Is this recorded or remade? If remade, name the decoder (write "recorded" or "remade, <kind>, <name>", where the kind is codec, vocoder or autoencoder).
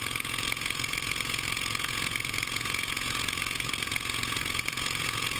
remade, vocoder, Vocos